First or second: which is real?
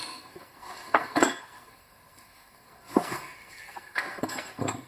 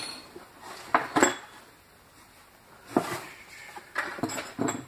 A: second